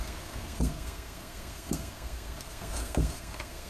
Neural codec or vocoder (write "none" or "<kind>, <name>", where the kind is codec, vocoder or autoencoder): codec, SNAC